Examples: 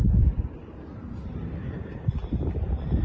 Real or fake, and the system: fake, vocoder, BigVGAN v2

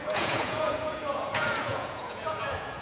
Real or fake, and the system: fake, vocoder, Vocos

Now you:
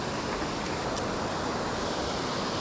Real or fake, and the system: real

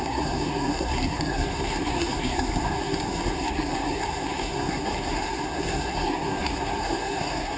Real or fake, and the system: fake, codec, SNAC